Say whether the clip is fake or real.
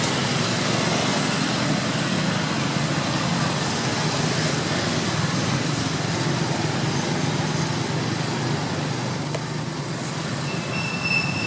real